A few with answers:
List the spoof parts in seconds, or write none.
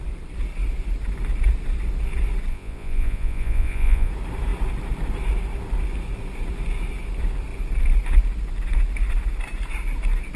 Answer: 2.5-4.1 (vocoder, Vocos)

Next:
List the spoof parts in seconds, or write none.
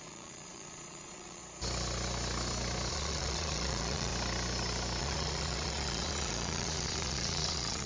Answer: 0.0-1.4 (vocoder, Vocos); 2.9-4.1; 5.0-7.9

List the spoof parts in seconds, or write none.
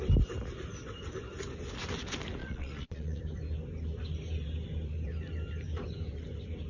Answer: 2.4-3.2 (vocoder, Vocos)